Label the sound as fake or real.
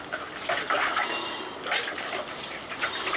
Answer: real